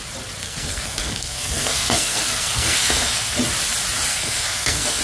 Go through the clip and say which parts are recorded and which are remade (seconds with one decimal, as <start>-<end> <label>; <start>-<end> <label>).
0.0-0.4 recorded; 0.4-3.4 remade; 3.4-4.1 recorded; 4.1-5.0 remade